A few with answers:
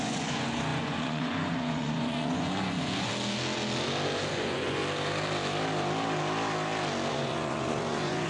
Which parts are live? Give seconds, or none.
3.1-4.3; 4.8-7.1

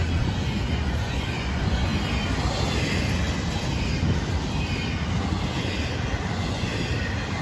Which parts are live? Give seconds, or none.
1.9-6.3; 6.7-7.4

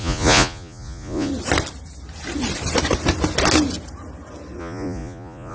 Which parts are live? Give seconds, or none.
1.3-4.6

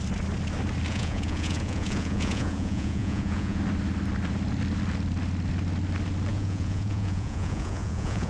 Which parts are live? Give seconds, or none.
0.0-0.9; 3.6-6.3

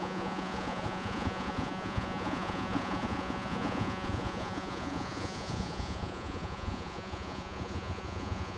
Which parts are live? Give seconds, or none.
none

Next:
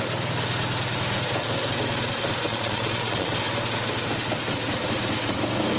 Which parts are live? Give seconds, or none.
0.0-2.5; 3.3-5.8